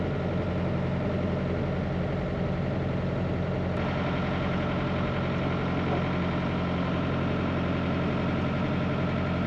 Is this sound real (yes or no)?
yes